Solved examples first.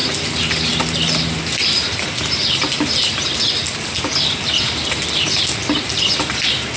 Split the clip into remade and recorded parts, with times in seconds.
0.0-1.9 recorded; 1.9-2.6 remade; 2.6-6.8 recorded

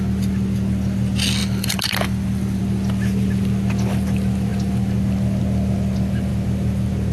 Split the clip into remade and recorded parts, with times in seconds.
0.0-1.4 recorded; 1.4-2.6 remade; 2.6-7.1 recorded

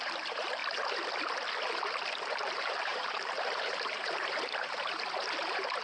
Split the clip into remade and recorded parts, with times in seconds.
0.0-0.6 remade; 0.6-2.3 recorded; 2.3-5.8 remade